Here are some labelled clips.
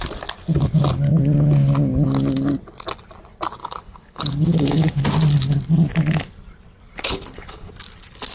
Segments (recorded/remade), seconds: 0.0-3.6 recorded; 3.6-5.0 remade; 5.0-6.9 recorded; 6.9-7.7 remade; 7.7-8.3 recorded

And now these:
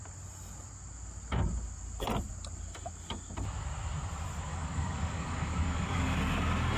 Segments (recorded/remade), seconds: 0.0-4.5 recorded; 4.5-6.2 remade; 6.2-6.8 recorded

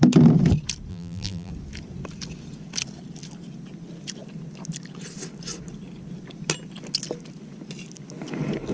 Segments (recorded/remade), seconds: 0.0-0.9 recorded; 0.9-1.5 remade; 1.5-8.7 recorded

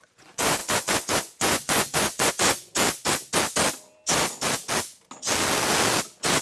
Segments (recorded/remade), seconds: 0.0-2.7 remade; 2.7-6.4 recorded

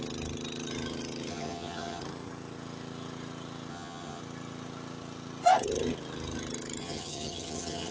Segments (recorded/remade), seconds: 0.0-1.3 recorded; 1.3-2.0 remade; 2.0-3.7 recorded; 3.7-4.2 remade; 4.2-6.8 recorded; 6.8-7.9 remade

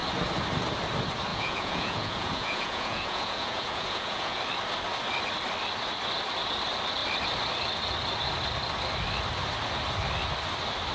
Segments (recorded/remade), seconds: 0.0-1.3 recorded; 1.3-4.4 remade; 4.4-10.9 recorded

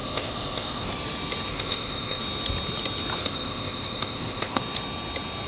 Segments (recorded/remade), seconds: 0.0-0.9 remade; 0.9-1.5 recorded; 1.5-2.2 remade; 2.2-3.2 recorded; 3.2-4.6 remade; 4.6-5.5 recorded

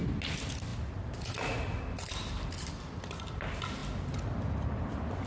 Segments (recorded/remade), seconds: 0.0-5.3 recorded